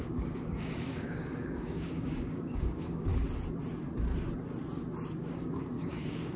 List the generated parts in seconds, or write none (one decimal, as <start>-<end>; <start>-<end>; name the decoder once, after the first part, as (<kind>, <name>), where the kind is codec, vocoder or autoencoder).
0.0-3.1 (codec, DAC); 5.2-6.4